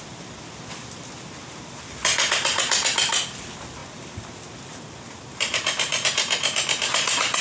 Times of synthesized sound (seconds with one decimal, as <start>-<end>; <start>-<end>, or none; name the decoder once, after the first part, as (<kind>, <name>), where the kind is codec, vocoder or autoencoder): 5.3-7.4 (vocoder, BigVGAN v2)